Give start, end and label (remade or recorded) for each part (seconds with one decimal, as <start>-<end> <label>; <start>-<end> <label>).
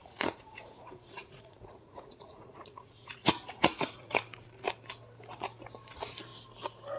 0.0-4.2 remade; 4.2-7.0 recorded